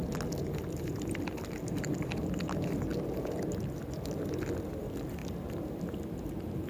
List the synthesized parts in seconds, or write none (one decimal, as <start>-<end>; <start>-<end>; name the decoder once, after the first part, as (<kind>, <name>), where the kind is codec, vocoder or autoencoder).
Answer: 0.0-0.9 (vocoder, BigVGAN v2); 2.9-4.8; 5.2-5.8